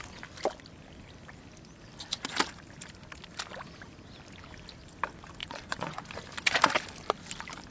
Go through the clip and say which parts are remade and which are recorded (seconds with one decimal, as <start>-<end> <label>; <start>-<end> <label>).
0.0-5.4 recorded; 5.4-6.0 remade; 6.0-7.7 recorded